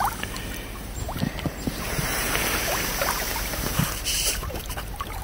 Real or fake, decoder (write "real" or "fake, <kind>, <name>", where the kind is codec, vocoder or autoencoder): fake, vocoder, BigVGAN v2